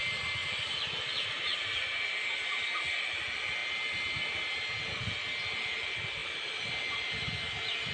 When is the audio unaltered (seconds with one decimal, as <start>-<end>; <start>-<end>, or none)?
0.0-0.4; 1.8-7.9